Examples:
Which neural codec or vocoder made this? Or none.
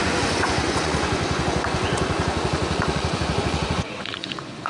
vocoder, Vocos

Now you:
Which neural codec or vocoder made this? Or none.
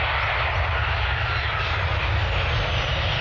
none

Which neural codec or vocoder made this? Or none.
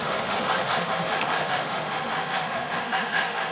autoencoder, DAC-VAE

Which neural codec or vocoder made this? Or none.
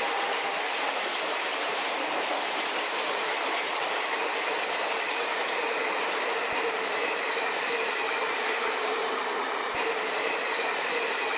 vocoder, BigVGAN v2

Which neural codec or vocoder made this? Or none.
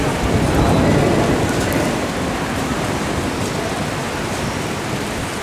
none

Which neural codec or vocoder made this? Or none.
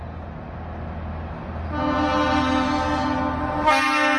none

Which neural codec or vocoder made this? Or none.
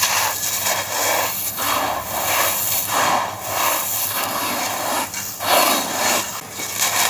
none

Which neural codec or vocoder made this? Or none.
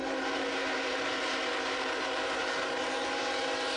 vocoder, BigVGAN v2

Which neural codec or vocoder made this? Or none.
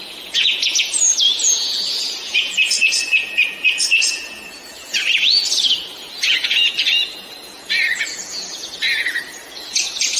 vocoder, Vocos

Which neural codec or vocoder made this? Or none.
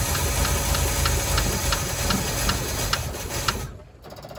none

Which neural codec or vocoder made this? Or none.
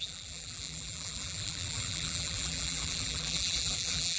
vocoder, BigVGAN v2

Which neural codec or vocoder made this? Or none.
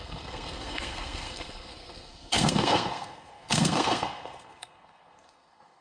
codec, SNAC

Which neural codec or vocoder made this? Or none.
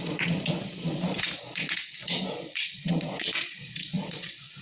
vocoder, Vocos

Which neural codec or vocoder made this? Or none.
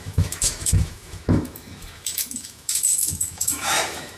autoencoder, DAC-VAE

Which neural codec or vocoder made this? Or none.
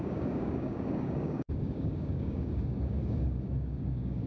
codec, DAC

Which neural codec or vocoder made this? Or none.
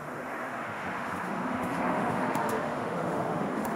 autoencoder, DAC-VAE